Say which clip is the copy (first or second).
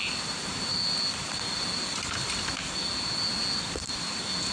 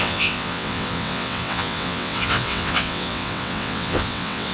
second